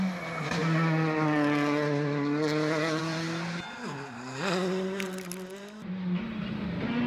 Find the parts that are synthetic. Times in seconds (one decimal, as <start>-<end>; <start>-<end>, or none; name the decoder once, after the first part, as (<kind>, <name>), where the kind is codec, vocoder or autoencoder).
none